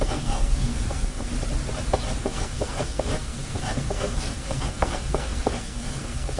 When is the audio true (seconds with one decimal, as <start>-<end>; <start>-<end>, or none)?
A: 1.3-2.2